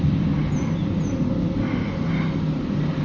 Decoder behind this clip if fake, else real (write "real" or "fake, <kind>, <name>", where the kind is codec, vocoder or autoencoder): real